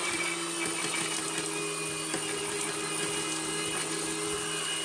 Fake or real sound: real